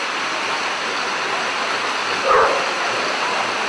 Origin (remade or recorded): recorded